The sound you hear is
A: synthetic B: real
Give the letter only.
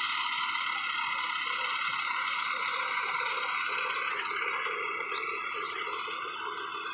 B